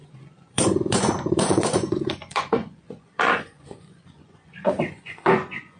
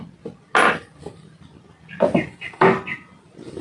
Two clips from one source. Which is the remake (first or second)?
first